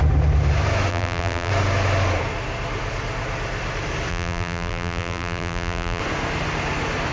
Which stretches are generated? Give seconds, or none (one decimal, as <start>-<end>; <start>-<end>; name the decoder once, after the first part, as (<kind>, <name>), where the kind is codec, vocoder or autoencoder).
0.9-1.5 (vocoder, BigVGAN v2); 4.1-6.0